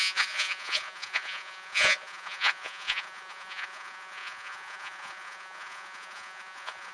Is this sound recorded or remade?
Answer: remade